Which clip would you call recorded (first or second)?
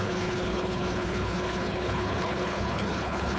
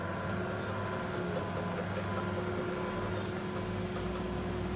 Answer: second